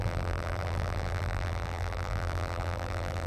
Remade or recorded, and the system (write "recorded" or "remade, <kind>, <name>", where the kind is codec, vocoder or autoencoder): remade, vocoder, BigVGAN v2